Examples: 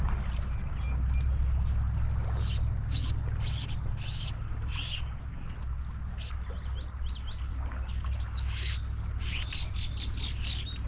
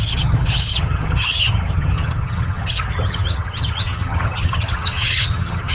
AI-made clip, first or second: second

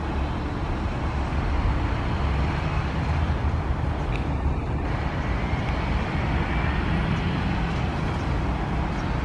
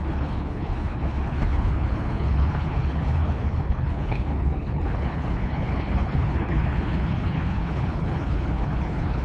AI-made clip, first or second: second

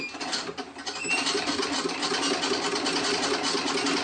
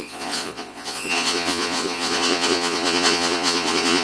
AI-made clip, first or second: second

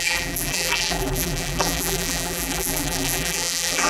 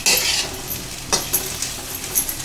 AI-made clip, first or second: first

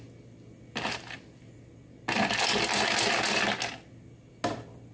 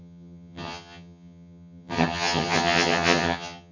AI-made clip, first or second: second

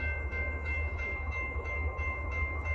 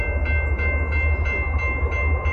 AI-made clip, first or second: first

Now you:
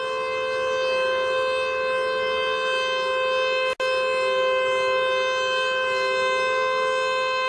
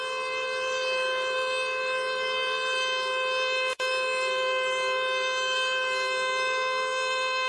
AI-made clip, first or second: second